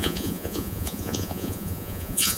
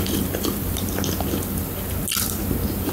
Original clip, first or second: second